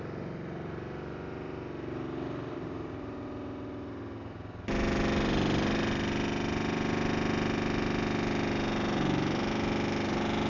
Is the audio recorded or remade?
recorded